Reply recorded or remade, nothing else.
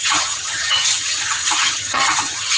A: remade